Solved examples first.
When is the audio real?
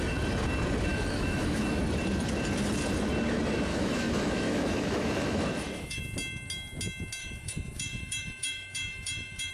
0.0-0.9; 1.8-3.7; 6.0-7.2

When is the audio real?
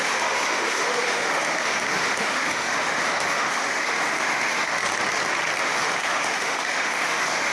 4.8-5.6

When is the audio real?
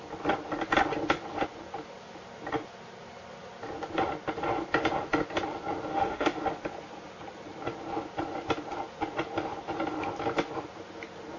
0.0-5.9; 6.4-11.4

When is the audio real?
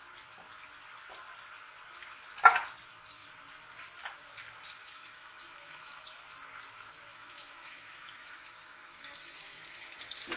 0.0-4.8; 6.2-7.1; 10.0-10.4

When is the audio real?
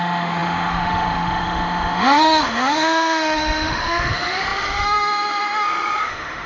none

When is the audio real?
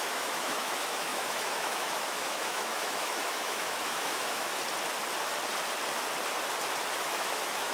4.5-7.1